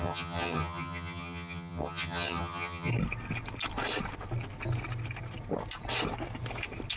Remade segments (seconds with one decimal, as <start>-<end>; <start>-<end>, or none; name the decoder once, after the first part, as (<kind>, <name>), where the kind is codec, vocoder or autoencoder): 0.0-2.9 (vocoder, HiFi-GAN)